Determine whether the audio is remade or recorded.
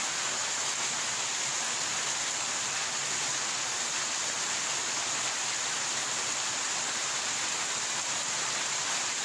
recorded